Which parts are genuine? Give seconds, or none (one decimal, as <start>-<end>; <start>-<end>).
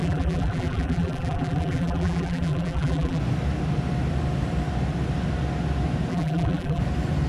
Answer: 3.2-6.1; 6.8-7.3